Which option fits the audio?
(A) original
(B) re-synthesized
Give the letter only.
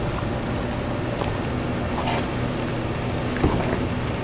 A